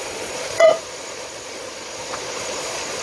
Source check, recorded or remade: remade